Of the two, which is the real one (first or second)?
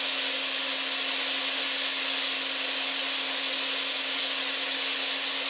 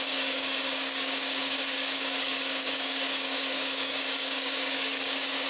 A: first